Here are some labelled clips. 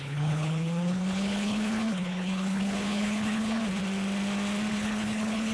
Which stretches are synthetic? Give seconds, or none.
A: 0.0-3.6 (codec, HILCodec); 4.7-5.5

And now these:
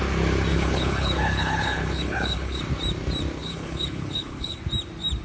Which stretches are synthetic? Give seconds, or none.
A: 0.5-2.6 (codec, HILCodec); 3.4-4.6

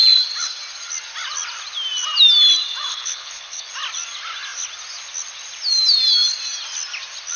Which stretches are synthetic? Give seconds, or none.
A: 2.9-3.7 (codec, HILCodec)